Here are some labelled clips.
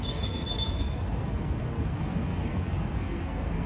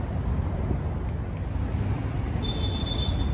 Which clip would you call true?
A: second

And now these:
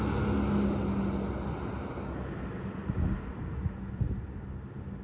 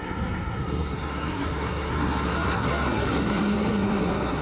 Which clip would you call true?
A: first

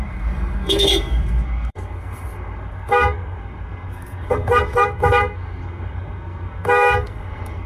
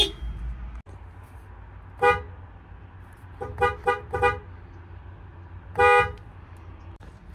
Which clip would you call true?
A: second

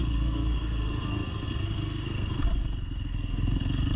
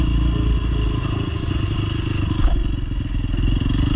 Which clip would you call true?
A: second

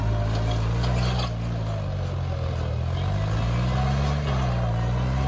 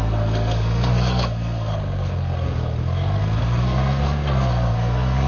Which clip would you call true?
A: first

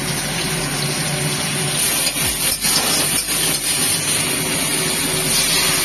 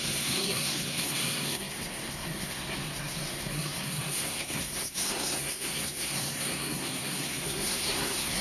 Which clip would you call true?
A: first